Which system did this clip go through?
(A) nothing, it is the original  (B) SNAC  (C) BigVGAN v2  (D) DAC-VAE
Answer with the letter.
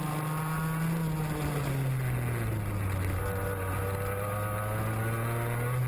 A